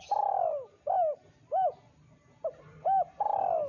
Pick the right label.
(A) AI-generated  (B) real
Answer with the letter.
B